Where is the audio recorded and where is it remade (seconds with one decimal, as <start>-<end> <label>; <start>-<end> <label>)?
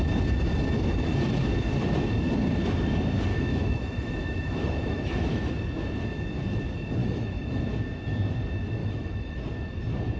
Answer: 0.0-3.3 recorded; 3.3-5.5 remade; 5.5-7.0 recorded; 7.0-7.6 remade; 7.6-8.8 recorded; 8.8-9.4 remade; 9.4-10.2 recorded